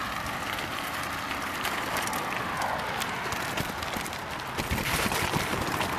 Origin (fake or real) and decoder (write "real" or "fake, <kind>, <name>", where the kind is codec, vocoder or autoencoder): real